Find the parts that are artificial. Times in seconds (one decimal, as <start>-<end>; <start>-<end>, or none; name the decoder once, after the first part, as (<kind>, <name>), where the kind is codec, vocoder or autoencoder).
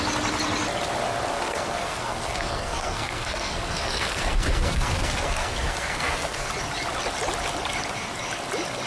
1.3-6.5 (codec, SNAC)